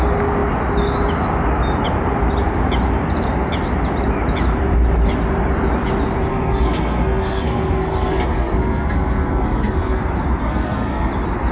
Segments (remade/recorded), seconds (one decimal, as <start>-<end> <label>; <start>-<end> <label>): 0.0-6.3 recorded; 6.3-10.0 remade; 10.0-10.4 recorded; 10.4-11.1 remade; 11.1-11.5 recorded